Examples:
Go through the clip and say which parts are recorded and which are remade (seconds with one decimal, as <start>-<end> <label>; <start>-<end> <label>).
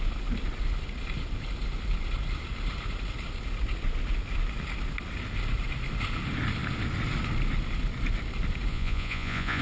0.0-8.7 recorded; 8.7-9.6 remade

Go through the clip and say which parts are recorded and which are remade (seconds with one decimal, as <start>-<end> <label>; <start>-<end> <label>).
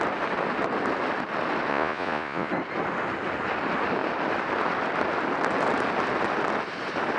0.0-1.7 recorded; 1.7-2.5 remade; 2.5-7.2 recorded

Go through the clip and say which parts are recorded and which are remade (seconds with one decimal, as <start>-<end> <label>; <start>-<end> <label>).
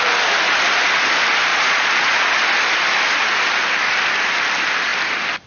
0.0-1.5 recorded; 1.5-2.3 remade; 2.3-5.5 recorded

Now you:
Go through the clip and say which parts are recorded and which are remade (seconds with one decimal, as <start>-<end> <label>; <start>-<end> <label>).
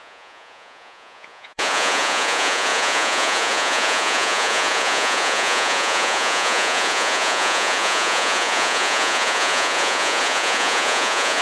0.0-11.4 remade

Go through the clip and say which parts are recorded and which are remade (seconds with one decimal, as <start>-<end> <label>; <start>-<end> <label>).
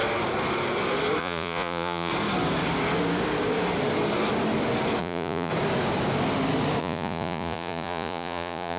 0.0-1.2 recorded; 1.2-2.1 remade; 2.1-5.0 recorded; 5.0-5.5 remade; 5.5-6.8 recorded; 6.8-8.8 remade